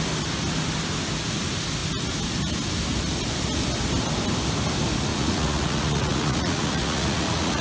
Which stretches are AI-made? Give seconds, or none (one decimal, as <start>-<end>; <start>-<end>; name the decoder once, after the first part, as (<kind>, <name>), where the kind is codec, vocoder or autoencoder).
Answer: 5.1-7.6 (vocoder, Vocos)